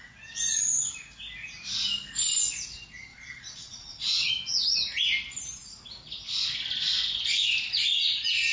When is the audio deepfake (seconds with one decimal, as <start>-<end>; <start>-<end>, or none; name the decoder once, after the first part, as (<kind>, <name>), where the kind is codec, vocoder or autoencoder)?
3.1-4.3 (vocoder, Vocos)